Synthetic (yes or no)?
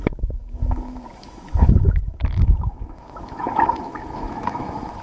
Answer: yes